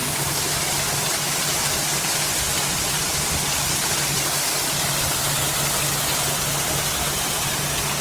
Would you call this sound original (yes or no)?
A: yes